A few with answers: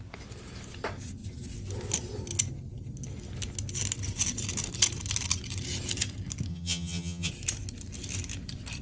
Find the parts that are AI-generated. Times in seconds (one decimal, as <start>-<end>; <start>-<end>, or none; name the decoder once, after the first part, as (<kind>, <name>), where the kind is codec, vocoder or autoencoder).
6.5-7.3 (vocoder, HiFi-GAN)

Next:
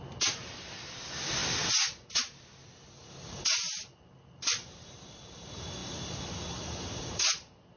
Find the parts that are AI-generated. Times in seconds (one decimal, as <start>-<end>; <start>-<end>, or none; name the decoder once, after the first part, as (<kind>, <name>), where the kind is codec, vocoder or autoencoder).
none

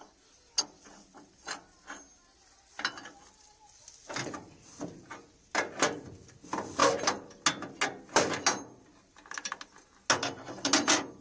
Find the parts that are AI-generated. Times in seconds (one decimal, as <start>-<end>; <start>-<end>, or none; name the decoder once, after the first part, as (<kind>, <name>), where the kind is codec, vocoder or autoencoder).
none

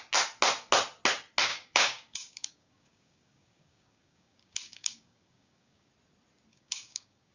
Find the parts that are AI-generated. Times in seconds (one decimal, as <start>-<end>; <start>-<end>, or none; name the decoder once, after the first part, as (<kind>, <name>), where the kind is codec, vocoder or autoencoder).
1.5-5.9 (codec, DAC); 6.5-7.3

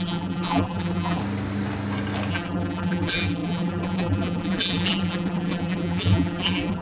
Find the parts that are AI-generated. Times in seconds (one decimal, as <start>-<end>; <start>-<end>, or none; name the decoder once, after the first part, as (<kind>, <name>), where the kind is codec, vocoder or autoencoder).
0.0-1.2 (vocoder, BigVGAN v2); 2.3-6.8

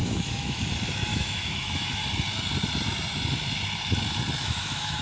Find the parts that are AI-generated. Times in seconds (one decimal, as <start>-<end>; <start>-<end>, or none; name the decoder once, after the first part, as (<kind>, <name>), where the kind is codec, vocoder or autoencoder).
0.0-0.6 (autoencoder, DAC-VAE); 1.1-2.0; 4.4-5.0